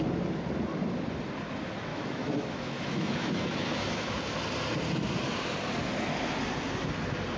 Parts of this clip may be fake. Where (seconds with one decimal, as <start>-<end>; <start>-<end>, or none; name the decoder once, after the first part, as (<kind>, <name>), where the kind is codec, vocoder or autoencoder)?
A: 1.9-4.2 (autoencoder, DAC-VAE)